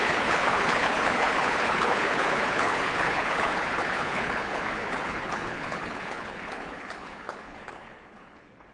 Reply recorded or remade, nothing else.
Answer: remade